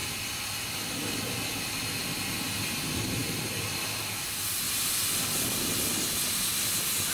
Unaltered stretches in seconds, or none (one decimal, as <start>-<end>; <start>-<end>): 0.0-3.2; 4.0-7.1